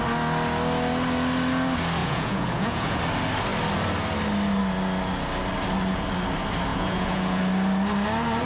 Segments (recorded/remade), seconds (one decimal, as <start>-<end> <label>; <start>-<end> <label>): 0.0-2.0 recorded; 2.0-3.0 remade; 3.0-6.7 recorded; 6.7-7.4 remade; 7.4-8.5 recorded

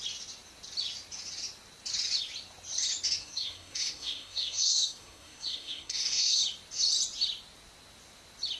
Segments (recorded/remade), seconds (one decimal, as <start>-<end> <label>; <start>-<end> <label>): 0.0-3.2 recorded; 3.2-6.4 remade; 6.4-8.6 recorded

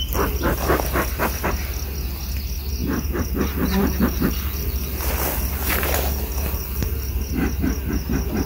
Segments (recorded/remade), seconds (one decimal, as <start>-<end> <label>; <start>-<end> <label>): 0.0-8.5 recorded

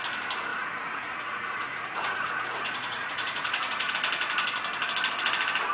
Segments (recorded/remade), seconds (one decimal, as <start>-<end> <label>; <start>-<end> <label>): 0.0-0.5 recorded; 0.5-3.9 remade; 3.9-5.7 recorded

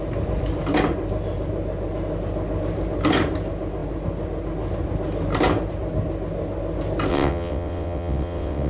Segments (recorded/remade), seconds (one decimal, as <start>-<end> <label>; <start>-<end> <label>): 0.0-7.1 recorded; 7.1-8.7 remade